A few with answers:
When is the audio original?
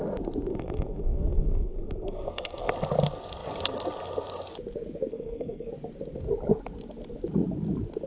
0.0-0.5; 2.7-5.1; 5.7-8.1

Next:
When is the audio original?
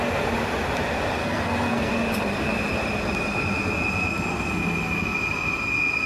0.0-1.2; 1.9-6.1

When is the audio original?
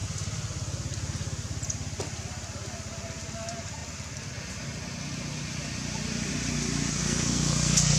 0.0-6.9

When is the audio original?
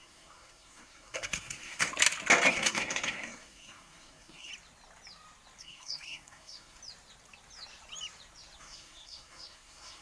1.9-2.5; 4.5-5.6; 6.8-8.6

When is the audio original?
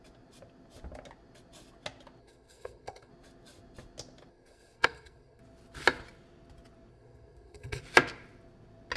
0.0-2.2; 3.1-4.3; 5.4-6.9; 7.8-9.0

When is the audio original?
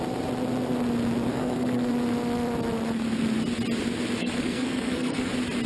0.0-1.3; 1.9-4.2; 5.3-5.7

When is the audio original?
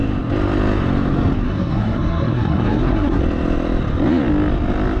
0.0-1.4; 3.2-5.0